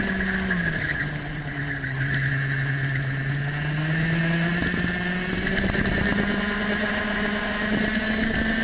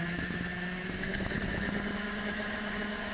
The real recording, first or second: first